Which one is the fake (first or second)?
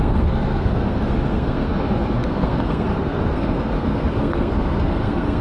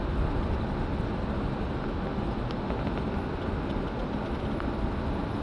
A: first